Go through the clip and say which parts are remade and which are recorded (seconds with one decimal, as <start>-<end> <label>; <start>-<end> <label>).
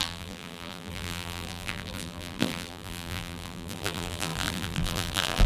0.0-5.5 remade